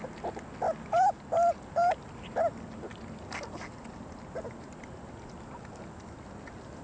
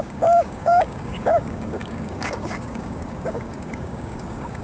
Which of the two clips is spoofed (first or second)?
second